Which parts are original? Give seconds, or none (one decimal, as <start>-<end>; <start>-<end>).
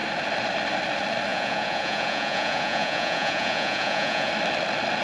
0.0-1.3; 4.3-5.0